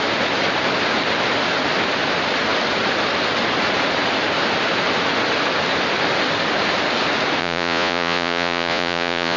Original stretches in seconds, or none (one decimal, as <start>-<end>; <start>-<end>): 0.0-7.4